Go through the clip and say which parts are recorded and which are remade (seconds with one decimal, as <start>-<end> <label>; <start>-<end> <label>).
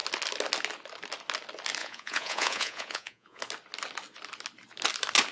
0.0-1.8 recorded; 1.8-3.4 remade; 3.4-5.3 recorded